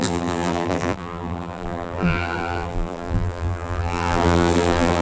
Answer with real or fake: fake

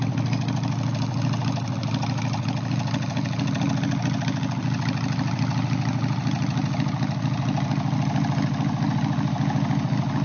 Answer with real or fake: real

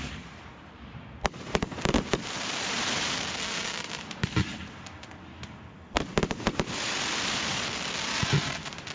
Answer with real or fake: fake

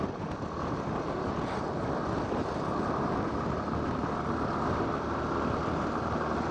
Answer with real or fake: real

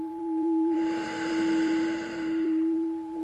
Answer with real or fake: fake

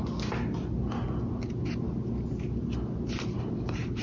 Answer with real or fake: real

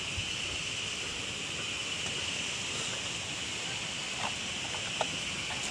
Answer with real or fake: real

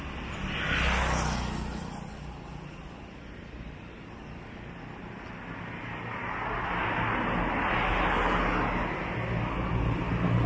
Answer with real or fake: real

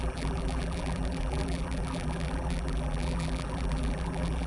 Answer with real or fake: fake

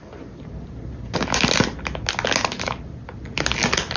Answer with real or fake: real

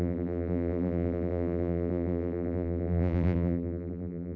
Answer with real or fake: fake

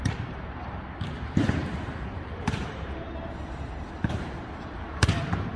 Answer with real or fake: fake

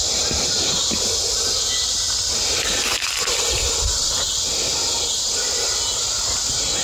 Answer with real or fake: real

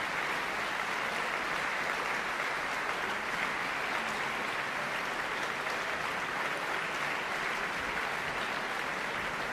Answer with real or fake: real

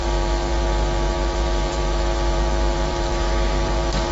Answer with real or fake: fake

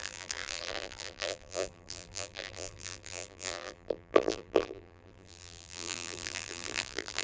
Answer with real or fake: fake